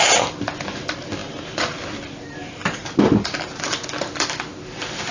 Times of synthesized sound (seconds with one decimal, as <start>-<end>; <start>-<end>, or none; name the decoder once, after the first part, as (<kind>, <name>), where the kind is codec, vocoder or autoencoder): none